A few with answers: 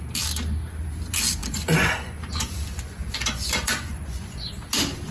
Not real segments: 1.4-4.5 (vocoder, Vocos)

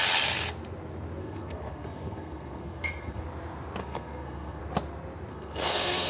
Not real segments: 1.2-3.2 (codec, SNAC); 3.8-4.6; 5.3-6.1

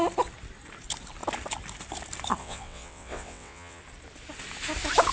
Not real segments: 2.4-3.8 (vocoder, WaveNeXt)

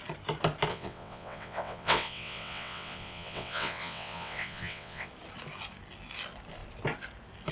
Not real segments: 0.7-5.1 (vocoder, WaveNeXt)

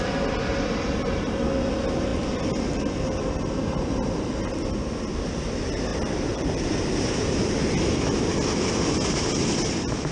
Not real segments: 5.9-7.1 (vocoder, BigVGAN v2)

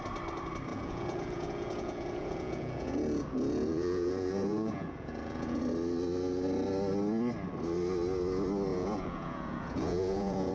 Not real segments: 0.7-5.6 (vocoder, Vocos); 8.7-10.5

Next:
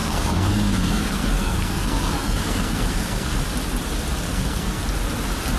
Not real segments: 0.0-3.4 (codec, SNAC); 4.3-4.8

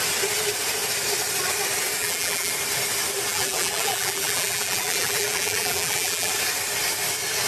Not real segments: 2.0-2.5 (vocoder, BigVGAN v2); 3.3-6.3